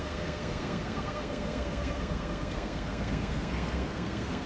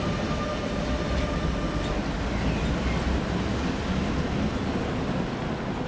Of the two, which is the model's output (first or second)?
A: first